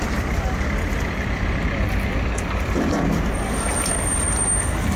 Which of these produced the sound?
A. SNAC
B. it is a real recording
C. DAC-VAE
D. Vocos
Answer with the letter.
B